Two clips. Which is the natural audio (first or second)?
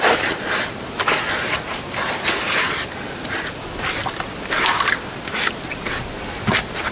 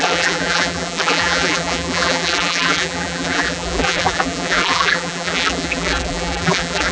first